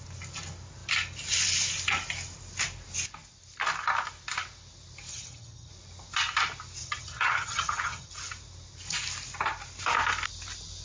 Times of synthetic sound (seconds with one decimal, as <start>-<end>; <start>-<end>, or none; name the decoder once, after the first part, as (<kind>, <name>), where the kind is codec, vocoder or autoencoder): 5.1-5.7 (vocoder, HiFi-GAN); 6.8-8.1